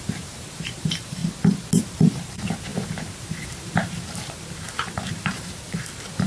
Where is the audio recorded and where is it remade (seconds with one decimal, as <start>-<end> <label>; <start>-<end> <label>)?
0.0-1.2 remade; 1.2-1.8 recorded; 1.8-6.3 remade